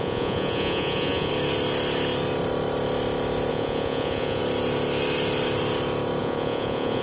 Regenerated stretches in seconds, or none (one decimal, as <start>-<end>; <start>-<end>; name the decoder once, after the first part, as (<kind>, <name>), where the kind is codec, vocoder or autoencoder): 0.0-1.3 (vocoder, Vocos); 3.5-4.4; 6.2-7.0